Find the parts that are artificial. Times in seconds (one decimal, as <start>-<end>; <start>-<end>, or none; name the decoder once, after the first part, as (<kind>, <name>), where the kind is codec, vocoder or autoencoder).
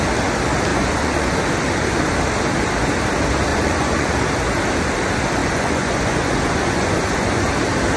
0.7-1.3 (vocoder, Vocos); 3.5-4.1; 5.4-7.5